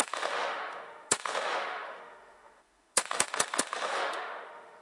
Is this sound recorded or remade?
remade